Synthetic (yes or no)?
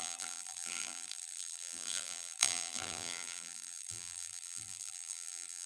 yes